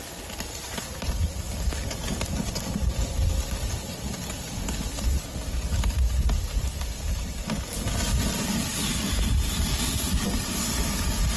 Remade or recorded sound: recorded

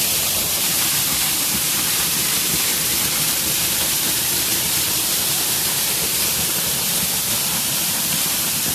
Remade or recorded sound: remade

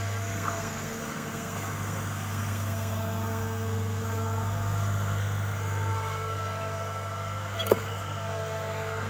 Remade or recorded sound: remade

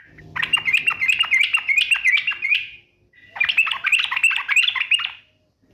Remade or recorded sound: recorded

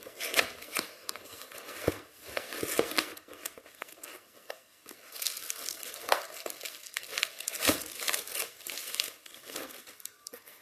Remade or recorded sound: remade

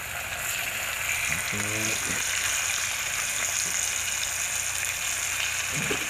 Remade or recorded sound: recorded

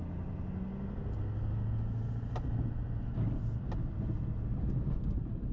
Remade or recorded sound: recorded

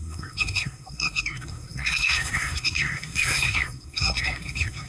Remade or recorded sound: remade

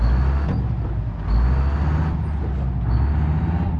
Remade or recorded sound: recorded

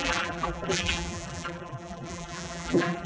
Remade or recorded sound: remade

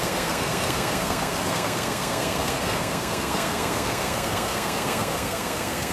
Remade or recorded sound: remade